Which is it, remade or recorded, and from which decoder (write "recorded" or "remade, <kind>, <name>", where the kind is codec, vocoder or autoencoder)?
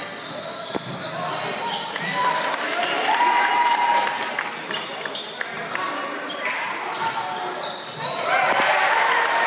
recorded